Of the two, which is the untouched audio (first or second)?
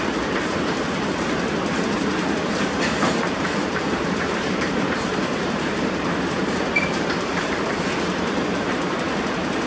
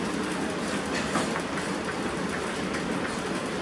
second